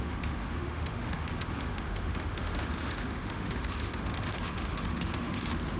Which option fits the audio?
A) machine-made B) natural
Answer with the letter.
A